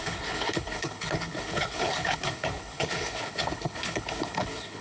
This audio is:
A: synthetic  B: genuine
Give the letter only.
A